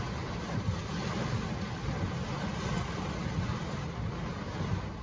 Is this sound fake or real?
real